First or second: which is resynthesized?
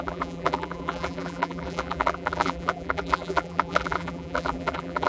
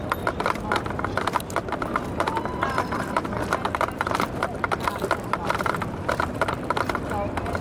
first